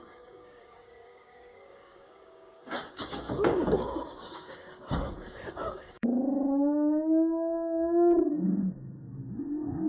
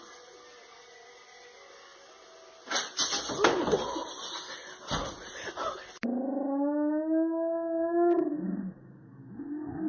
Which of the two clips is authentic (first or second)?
second